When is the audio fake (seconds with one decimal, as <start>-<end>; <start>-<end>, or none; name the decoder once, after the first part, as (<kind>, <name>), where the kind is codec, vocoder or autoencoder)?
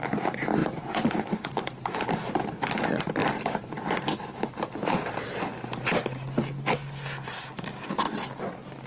0.6-2.4 (vocoder, BigVGAN v2); 3.2-5.1